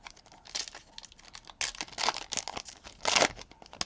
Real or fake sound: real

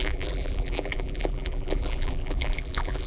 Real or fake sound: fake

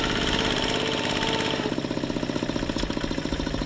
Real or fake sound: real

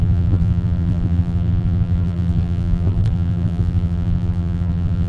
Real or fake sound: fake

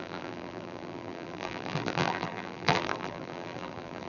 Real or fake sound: fake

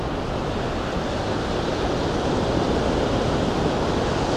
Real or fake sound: real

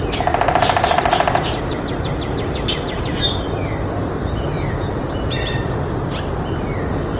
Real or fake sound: real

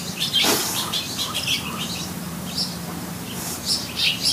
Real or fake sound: fake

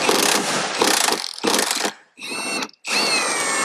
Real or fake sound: real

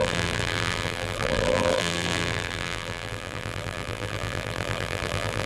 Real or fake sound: fake